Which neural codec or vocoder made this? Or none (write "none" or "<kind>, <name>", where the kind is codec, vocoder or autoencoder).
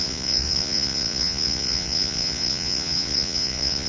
vocoder, Vocos